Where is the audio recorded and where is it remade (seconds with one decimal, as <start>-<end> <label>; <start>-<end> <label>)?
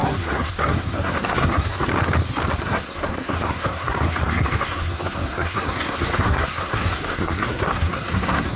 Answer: 0.0-1.9 remade; 1.9-2.6 recorded; 2.6-8.6 remade